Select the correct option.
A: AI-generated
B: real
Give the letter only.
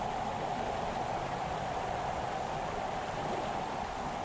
B